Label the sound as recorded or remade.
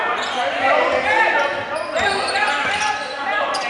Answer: recorded